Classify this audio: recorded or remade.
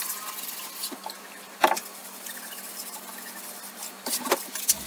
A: recorded